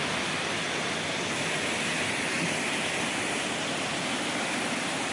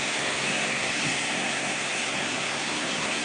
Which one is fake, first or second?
second